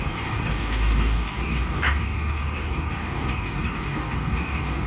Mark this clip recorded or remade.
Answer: remade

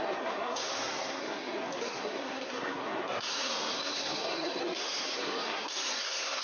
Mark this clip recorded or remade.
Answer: remade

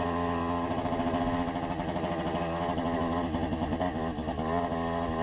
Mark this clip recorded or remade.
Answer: recorded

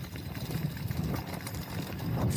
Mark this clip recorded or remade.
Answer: recorded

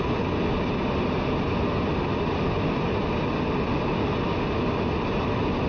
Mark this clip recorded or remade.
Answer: recorded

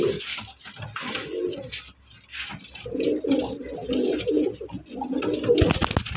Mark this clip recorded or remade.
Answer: recorded